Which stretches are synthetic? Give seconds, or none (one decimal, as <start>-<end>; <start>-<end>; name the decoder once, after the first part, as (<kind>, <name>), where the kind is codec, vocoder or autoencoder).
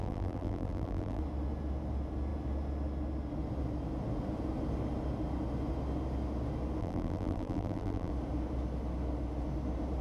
0.0-1.2 (vocoder, BigVGAN v2); 6.8-8.1